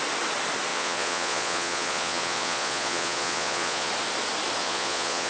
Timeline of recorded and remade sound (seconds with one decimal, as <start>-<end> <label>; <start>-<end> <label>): 0.0-0.7 recorded; 0.7-3.9 remade; 3.9-4.6 recorded; 4.6-5.3 remade